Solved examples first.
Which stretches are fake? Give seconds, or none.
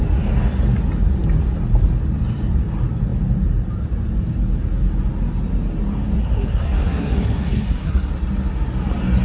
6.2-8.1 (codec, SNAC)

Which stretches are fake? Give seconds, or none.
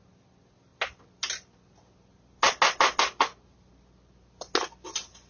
none